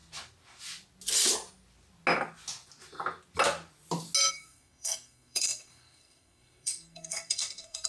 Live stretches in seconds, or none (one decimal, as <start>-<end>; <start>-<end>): 0.0-4.3